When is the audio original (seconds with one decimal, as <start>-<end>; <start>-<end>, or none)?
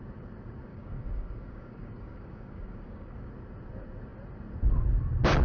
0.0-0.7; 3.3-5.4